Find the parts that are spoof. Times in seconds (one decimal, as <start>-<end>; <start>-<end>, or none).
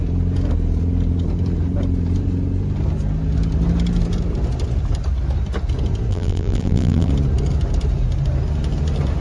6.1-7.1